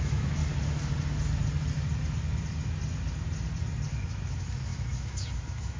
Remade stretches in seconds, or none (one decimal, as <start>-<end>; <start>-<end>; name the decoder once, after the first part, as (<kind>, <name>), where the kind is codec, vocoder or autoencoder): 0.0-0.4 (autoencoder, DAC-VAE); 3.9-5.8